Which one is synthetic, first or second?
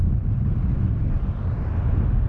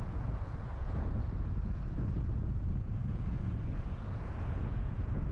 second